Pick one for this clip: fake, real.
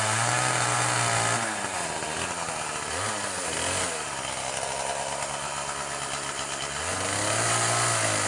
real